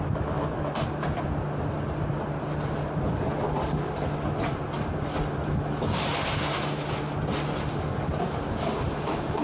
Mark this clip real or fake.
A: real